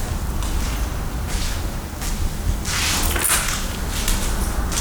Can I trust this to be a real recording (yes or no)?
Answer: yes